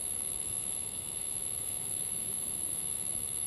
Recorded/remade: remade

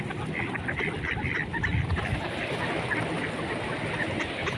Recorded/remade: recorded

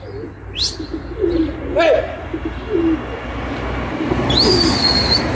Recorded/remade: recorded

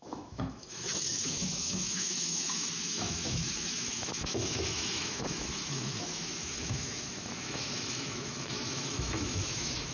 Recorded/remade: remade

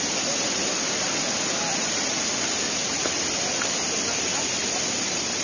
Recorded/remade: recorded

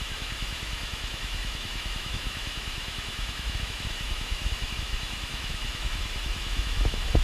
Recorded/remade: remade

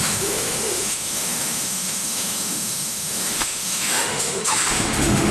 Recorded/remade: remade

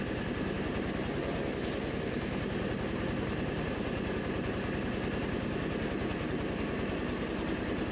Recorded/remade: recorded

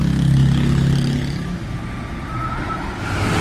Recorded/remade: recorded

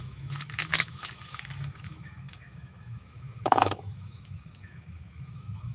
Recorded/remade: remade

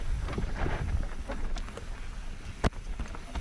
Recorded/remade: recorded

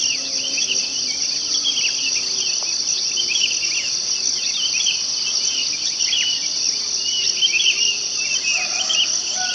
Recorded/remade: recorded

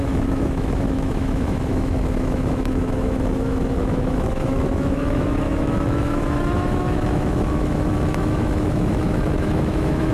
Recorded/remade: remade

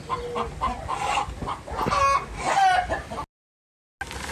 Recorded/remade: recorded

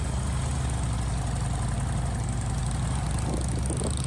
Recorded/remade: recorded